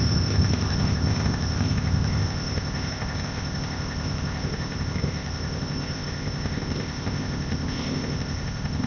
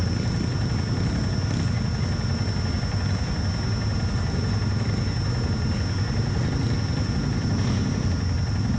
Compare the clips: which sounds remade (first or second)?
first